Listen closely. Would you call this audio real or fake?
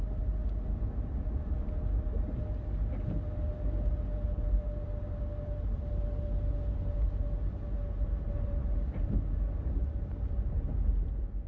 real